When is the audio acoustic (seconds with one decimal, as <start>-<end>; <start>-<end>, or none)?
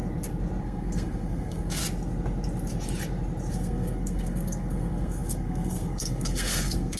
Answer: 0.0-0.6; 1.8-3.5